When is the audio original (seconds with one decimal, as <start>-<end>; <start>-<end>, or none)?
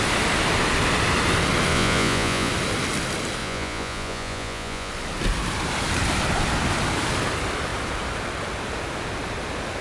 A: 0.0-1.7; 2.5-3.4; 4.9-9.8